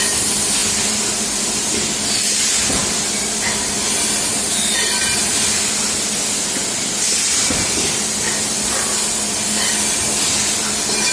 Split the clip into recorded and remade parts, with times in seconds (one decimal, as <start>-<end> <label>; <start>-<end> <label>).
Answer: 0.0-11.1 recorded